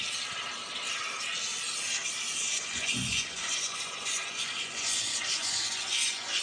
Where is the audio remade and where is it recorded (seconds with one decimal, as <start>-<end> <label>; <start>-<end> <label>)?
0.0-2.5 recorded; 2.5-6.4 remade